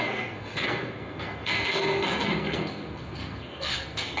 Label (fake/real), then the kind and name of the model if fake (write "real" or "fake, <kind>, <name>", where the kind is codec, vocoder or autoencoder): fake, codec, SNAC